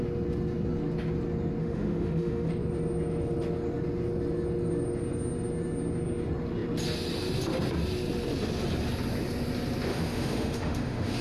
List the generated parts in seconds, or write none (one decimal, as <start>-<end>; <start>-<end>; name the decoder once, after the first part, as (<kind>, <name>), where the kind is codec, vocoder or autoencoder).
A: 1.6-2.5 (autoencoder, DAC-VAE); 9.9-11.2

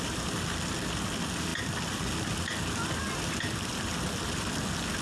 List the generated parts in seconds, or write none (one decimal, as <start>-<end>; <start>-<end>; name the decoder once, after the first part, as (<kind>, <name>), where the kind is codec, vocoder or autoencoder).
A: none

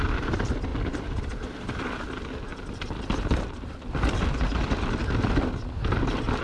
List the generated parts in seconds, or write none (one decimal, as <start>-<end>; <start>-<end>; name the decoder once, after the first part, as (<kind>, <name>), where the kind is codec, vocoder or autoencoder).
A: none

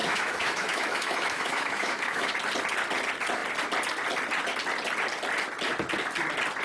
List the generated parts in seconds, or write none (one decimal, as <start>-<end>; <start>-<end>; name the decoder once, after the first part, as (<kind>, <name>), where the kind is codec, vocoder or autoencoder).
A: 0.0-2.3 (autoencoder, DAC-VAE)

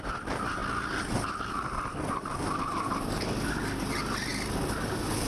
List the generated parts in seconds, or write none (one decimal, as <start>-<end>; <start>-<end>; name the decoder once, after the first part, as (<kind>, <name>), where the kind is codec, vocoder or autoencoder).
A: none